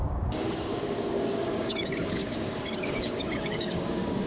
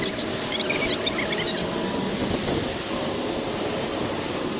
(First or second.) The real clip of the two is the second